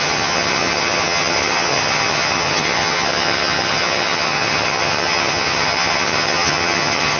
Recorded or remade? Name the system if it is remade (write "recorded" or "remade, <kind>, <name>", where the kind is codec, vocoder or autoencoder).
remade, vocoder, HiFi-GAN